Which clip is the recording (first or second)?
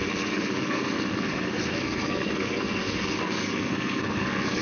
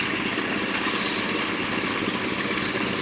second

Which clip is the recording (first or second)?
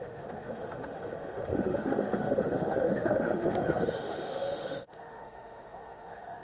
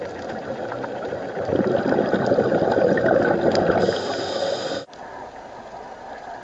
second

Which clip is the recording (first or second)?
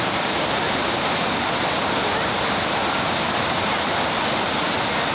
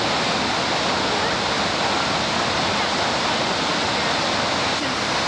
second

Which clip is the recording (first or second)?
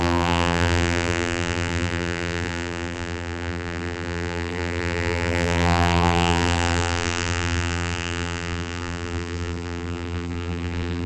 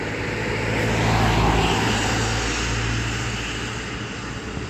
second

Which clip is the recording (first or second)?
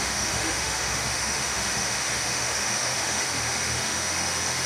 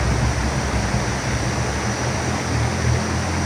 second